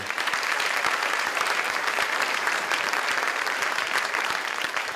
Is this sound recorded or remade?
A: remade